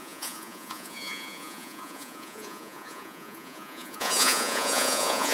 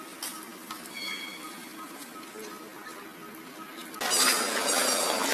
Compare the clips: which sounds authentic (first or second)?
second